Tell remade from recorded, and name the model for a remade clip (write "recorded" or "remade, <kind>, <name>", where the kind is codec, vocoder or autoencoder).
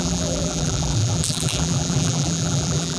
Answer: remade, vocoder, BigVGAN v2